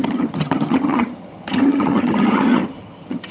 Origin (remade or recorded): remade